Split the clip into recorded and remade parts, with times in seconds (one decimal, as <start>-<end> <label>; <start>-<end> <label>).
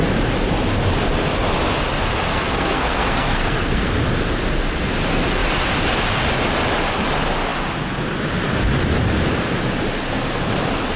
0.0-2.3 recorded; 2.3-3.9 remade; 3.9-11.0 recorded